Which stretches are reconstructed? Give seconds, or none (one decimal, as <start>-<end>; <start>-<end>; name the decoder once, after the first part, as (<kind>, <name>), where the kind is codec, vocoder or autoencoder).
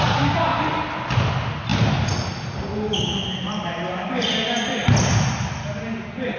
none